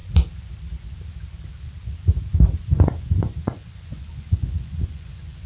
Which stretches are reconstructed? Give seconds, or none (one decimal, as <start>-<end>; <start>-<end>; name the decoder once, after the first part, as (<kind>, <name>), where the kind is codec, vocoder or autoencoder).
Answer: 2.6-5.5 (vocoder, Vocos)